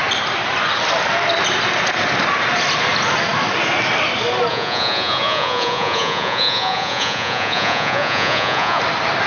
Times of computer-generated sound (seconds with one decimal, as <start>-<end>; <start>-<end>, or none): 4.5-8.8